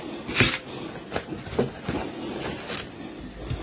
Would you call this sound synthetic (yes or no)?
no